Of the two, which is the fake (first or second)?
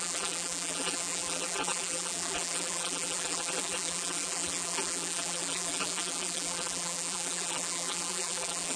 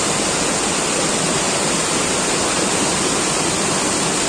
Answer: first